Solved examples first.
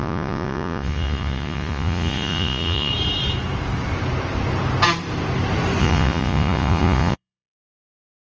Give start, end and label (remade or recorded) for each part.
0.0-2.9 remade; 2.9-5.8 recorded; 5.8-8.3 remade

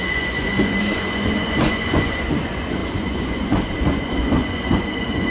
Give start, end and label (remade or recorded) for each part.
0.0-5.3 remade

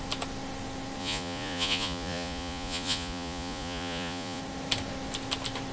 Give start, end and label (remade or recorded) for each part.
0.0-1.0 recorded; 1.0-4.4 remade; 4.4-5.7 recorded

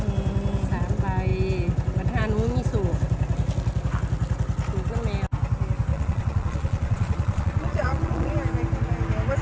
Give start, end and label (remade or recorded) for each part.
0.0-5.9 recorded; 5.9-8.3 remade; 8.3-9.4 recorded

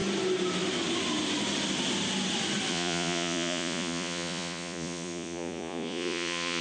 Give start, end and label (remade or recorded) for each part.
0.0-2.7 recorded; 2.7-6.6 remade

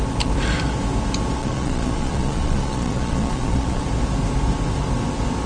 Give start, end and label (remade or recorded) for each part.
0.0-1.4 recorded; 1.4-3.8 remade; 3.8-5.5 recorded

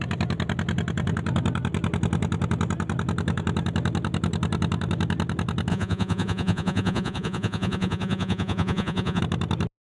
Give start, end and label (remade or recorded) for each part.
0.0-5.7 recorded; 5.7-9.2 remade; 9.2-9.8 recorded